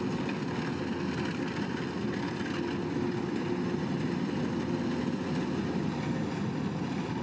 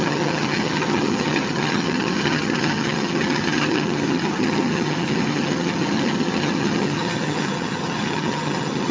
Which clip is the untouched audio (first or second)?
first